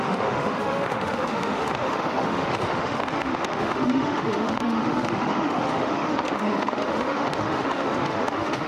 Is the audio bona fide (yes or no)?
no